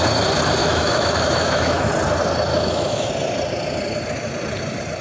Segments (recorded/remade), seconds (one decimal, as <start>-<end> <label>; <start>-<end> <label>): 0.0-0.6 recorded; 0.6-1.9 remade; 1.9-2.5 recorded; 2.5-3.1 remade; 3.1-5.0 recorded